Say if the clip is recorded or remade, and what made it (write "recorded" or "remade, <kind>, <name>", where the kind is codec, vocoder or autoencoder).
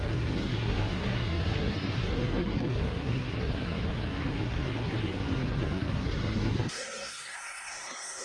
remade, codec, SNAC